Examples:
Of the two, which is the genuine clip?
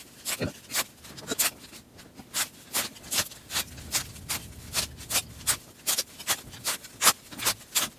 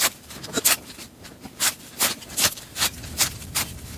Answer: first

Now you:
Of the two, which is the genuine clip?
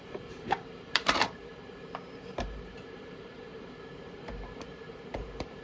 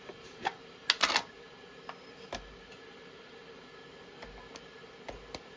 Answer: second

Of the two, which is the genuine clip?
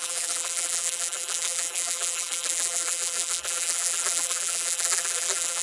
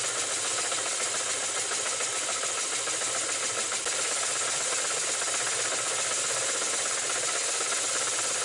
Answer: second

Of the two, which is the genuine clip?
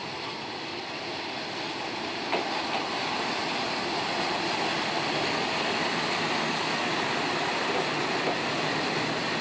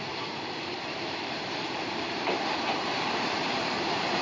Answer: first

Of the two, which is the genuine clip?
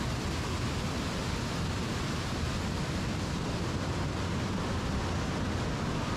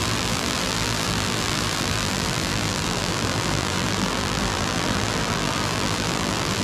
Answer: first